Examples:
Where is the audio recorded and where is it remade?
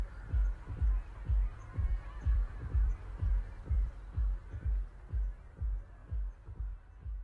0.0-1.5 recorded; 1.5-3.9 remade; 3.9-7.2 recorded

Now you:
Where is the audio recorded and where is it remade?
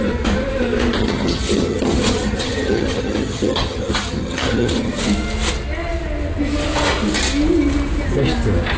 0.0-1.0 recorded; 1.0-5.0 remade; 5.0-8.8 recorded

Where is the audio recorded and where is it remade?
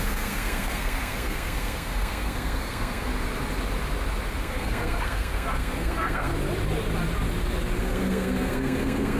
0.0-3.1 remade; 3.1-4.4 recorded; 4.4-6.3 remade; 6.3-7.8 recorded; 7.8-9.2 remade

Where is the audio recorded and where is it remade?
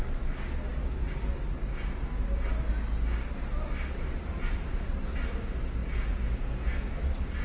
0.0-5.8 recorded; 5.8-6.9 remade; 6.9-7.4 recorded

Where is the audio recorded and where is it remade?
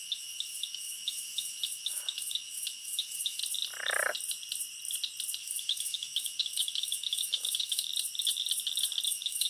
0.0-3.4 remade; 3.4-5.4 recorded; 5.4-7.9 remade; 7.9-9.1 recorded; 9.1-9.5 remade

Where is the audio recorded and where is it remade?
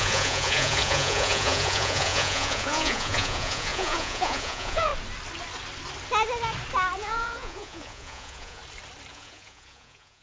0.0-4.9 remade; 4.9-7.0 recorded; 7.0-8.6 remade; 8.6-9.1 recorded; 9.1-10.2 remade